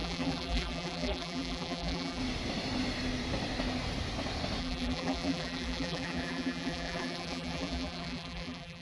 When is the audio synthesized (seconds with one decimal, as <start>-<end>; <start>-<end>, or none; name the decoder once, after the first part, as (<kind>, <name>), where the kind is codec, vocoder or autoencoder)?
0.0-2.2 (vocoder, BigVGAN v2); 4.6-8.8